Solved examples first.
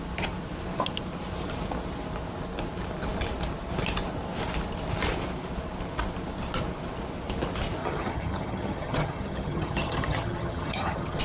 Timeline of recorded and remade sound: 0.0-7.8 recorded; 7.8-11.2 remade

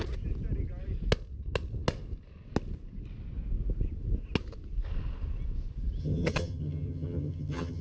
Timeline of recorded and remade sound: 0.0-6.0 recorded; 6.0-7.8 remade

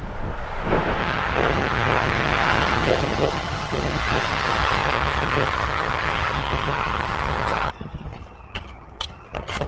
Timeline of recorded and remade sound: 0.0-1.0 recorded; 1.0-9.7 remade

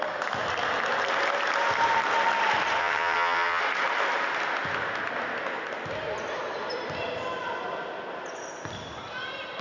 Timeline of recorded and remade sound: 0.0-2.8 recorded; 2.8-3.6 remade; 3.6-9.6 recorded

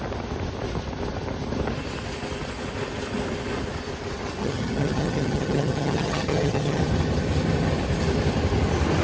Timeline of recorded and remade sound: 0.0-4.4 recorded; 4.4-6.8 remade; 6.8-9.0 recorded

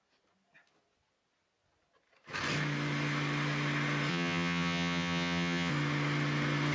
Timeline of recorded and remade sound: 0.0-4.1 recorded; 4.1-5.7 remade; 5.7-6.7 recorded